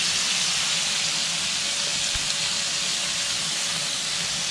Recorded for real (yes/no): yes